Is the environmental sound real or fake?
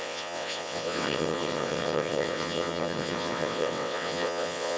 fake